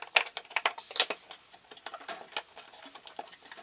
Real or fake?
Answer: real